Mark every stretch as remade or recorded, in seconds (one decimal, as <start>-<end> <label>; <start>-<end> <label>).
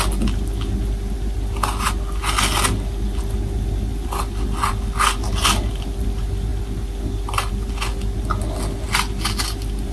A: 0.0-9.9 recorded